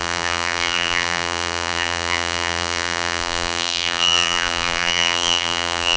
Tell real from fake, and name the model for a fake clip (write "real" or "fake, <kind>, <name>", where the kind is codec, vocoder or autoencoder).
fake, vocoder, BigVGAN v2